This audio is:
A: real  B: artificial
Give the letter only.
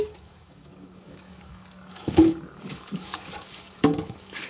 B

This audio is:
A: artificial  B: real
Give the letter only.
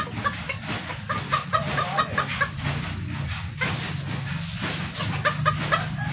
B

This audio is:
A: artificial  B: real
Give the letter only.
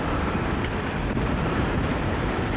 A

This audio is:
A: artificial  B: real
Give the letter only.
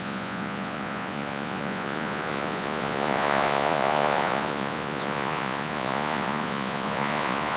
A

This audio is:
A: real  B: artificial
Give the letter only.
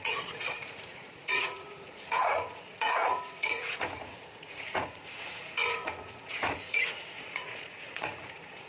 B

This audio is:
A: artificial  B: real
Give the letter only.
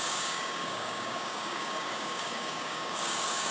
A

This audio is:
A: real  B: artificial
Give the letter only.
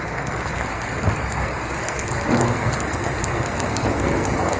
B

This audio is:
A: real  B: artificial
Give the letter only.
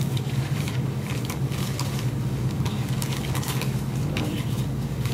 B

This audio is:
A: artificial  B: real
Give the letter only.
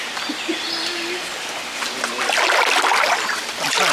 B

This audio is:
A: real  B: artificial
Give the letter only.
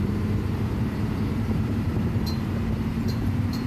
B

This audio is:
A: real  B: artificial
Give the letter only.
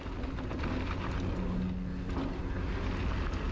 A